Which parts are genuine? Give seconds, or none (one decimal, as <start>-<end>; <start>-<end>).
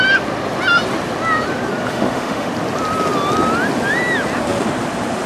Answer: 0.0-1.9; 2.5-5.3